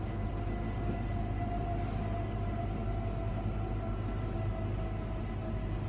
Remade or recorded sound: recorded